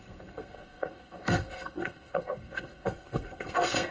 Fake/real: fake